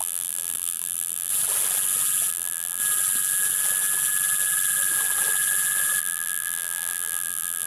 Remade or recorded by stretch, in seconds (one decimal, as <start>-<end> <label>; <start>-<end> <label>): 0.0-1.3 remade; 1.3-2.3 recorded; 2.3-2.8 remade; 2.8-6.0 recorded; 6.0-7.7 remade